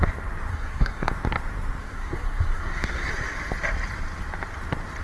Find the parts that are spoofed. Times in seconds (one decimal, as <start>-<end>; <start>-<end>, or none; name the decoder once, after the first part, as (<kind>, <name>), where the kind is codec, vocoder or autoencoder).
0.5-1.1 (codec, SNAC); 1.8-3.1